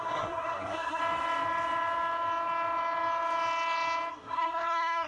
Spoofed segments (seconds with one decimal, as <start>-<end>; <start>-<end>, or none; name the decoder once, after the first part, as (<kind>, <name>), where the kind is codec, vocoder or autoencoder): 0.0-1.0 (codec, SNAC); 4.1-5.1